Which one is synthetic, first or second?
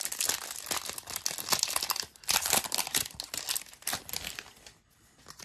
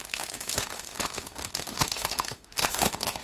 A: second